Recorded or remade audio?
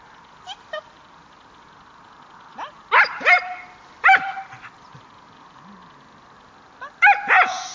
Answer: recorded